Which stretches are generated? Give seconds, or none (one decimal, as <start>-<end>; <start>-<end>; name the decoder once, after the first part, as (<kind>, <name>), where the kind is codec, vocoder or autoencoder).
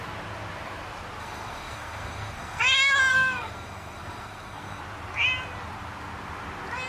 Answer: 1.2-2.6 (codec, SNAC); 3.1-4.8